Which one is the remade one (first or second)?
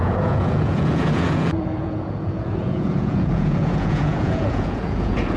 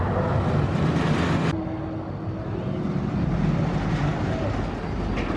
first